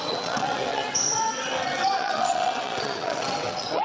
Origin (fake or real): fake